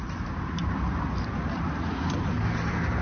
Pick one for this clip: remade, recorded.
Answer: recorded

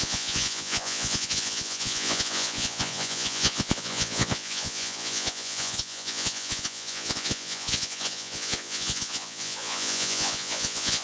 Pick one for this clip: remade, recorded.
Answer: remade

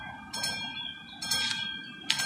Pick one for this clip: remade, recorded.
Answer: recorded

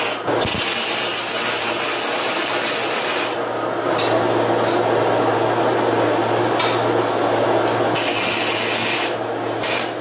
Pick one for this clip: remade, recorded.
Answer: recorded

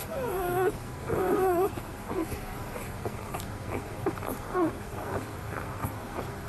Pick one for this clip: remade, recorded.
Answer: remade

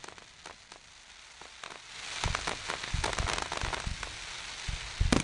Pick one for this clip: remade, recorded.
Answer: recorded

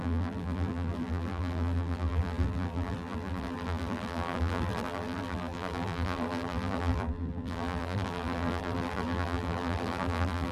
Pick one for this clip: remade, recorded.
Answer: remade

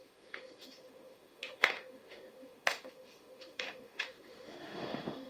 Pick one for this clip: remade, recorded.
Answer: remade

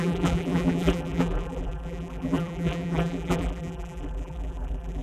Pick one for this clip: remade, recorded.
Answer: remade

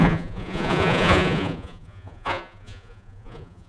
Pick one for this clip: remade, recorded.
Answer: remade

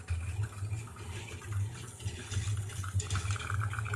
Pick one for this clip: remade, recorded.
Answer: recorded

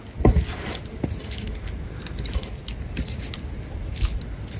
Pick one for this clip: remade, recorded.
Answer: recorded